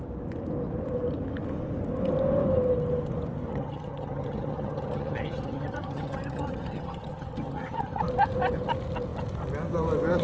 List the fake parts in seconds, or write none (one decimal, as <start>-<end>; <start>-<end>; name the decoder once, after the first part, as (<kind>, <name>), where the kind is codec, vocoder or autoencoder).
3.5-8.0 (vocoder, HiFi-GAN)

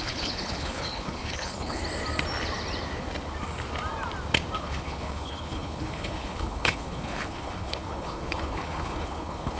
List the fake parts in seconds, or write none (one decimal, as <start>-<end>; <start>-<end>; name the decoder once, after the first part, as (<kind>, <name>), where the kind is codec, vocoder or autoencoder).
0.0-1.8 (codec, HILCodec); 4.6-9.6

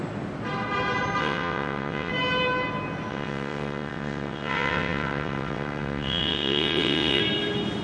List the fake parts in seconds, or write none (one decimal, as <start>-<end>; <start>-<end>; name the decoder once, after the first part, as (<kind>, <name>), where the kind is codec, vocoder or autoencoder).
1.2-2.1 (vocoder, WaveNeXt); 3.1-7.2

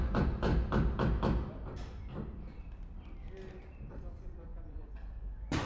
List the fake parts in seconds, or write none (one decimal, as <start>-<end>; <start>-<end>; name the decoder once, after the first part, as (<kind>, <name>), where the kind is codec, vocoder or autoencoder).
0.0-0.5 (vocoder, Vocos); 3.9-5.7

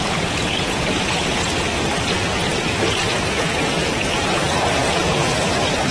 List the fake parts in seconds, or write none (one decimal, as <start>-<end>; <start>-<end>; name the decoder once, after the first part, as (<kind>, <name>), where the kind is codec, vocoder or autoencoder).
0.0-1.7 (vocoder, Vocos); 2.4-5.9